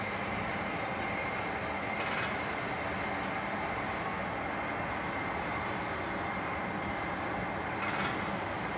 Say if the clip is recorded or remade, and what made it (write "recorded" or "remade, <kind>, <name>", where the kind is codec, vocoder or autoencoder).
recorded